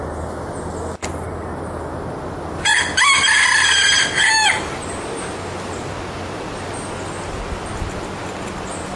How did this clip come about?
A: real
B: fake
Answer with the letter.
A